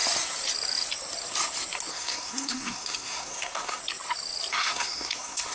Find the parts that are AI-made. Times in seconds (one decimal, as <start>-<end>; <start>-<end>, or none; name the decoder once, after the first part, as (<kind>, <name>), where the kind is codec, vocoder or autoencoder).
1.9-3.8 (codec, SNAC); 4.5-5.5